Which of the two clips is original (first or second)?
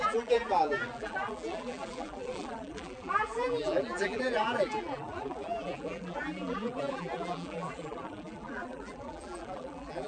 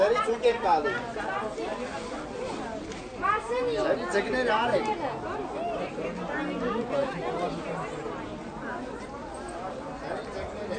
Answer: second